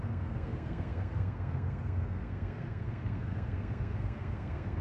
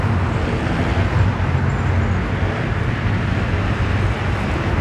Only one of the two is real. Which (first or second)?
second